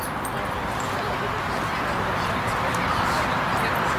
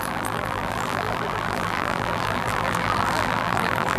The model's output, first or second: second